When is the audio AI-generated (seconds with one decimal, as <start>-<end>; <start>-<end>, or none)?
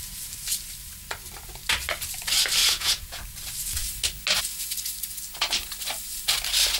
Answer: 2.6-3.2